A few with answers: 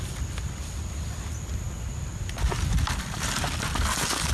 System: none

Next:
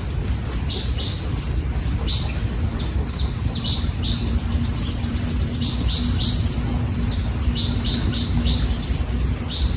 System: none